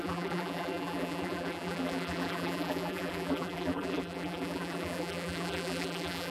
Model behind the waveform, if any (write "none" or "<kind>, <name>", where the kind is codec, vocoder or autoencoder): vocoder, BigVGAN v2